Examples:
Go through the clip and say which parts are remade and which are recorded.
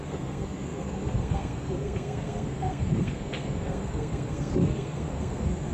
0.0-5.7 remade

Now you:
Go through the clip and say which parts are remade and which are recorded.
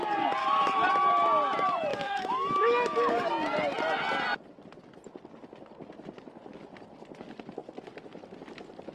0.0-0.4 recorded; 0.4-0.9 remade; 0.9-1.9 recorded; 1.9-3.3 remade; 3.3-8.9 recorded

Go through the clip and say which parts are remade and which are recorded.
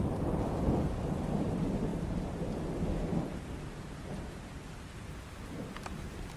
0.0-1.9 recorded; 1.9-2.5 remade; 2.5-3.1 recorded; 3.1-4.1 remade; 4.1-6.4 recorded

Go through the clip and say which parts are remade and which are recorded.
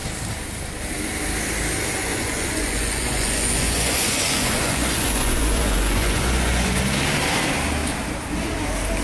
0.0-2.0 recorded; 2.0-6.8 remade; 6.8-9.0 recorded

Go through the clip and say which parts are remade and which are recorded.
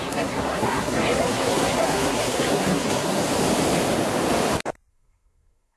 0.0-3.2 remade; 3.2-4.9 recorded; 4.9-5.8 remade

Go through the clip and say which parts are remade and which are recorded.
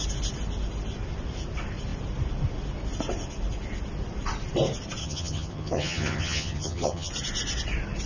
0.0-5.0 recorded; 5.0-7.1 remade; 7.1-8.1 recorded